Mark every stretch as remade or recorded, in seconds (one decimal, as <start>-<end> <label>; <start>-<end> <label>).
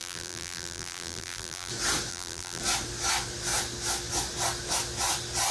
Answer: 0.0-1.7 remade; 1.7-2.1 recorded; 2.1-2.6 remade; 2.6-5.5 recorded